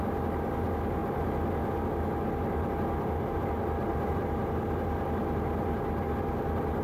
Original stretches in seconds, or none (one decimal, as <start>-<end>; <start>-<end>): 0.0-3.9; 4.7-6.8